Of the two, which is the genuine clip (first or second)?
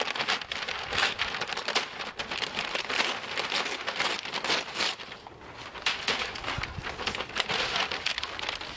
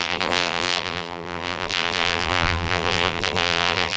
first